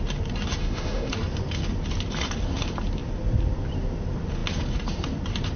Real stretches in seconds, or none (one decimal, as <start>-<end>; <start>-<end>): 0.0-0.6; 1.1-5.6